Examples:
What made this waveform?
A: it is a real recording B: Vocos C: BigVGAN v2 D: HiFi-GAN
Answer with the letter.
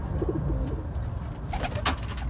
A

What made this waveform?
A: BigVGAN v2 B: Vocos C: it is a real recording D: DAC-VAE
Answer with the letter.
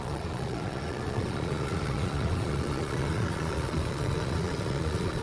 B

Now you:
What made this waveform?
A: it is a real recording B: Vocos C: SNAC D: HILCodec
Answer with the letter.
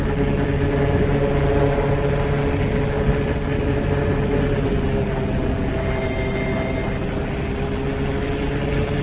A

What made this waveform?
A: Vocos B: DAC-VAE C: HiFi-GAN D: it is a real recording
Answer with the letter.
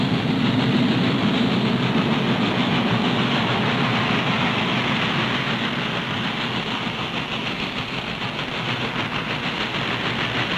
D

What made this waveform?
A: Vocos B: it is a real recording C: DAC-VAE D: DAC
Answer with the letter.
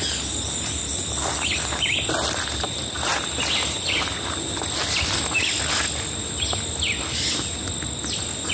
B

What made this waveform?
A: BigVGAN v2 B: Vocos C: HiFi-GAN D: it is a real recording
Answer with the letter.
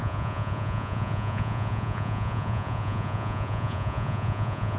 B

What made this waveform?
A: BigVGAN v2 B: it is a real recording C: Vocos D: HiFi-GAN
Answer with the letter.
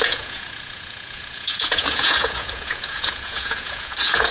C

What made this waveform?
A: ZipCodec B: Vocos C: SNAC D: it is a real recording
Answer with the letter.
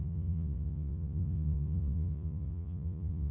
B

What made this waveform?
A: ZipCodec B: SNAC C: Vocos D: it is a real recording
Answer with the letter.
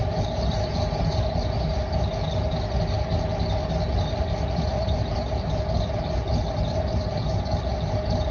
D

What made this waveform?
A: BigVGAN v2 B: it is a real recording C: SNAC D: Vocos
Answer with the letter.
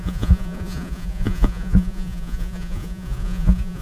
D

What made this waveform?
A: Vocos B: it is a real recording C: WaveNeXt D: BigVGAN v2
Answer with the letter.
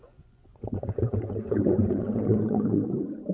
A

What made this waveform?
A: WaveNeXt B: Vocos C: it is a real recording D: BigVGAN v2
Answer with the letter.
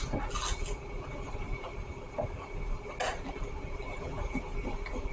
C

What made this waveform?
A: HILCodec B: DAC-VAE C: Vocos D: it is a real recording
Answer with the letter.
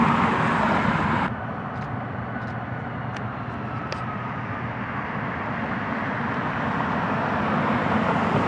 D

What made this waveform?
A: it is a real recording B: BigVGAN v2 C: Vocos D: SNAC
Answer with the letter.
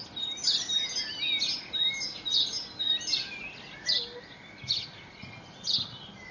A